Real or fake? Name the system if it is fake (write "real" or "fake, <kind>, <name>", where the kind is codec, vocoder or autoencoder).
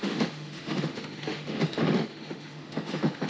fake, autoencoder, DAC-VAE